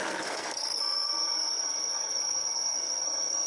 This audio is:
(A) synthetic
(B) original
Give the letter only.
A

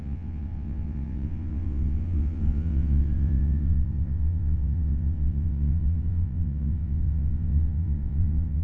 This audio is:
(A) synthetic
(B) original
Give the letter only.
A